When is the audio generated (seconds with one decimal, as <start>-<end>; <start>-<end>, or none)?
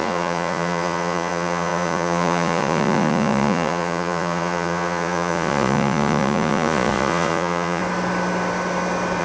0.0-7.8